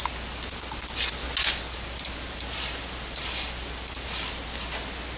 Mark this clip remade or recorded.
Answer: recorded